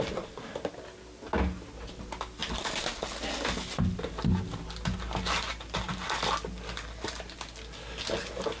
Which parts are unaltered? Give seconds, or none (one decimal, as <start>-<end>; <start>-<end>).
0.0-8.6